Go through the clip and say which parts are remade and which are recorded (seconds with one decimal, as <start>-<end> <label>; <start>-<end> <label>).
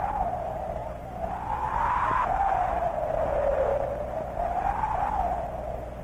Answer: 0.0-3.7 remade; 3.7-6.0 recorded